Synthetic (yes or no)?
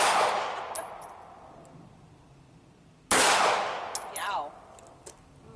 no